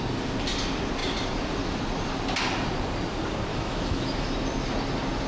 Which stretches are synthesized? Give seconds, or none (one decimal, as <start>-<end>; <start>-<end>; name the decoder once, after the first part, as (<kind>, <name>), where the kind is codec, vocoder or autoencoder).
3.5-4.3 (autoencoder, DAC-VAE)